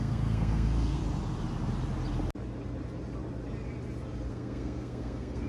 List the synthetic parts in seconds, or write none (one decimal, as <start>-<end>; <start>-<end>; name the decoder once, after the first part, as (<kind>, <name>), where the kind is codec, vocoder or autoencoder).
0.0-1.0 (codec, SNAC); 4.3-5.5

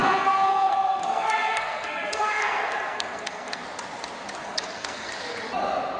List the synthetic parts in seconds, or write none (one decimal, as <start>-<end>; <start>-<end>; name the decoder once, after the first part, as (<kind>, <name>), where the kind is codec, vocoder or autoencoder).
0.0-3.6 (codec, SNAC); 4.4-5.1